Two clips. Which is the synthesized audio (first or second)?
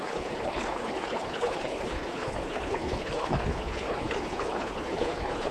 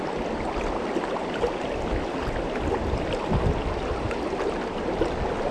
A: first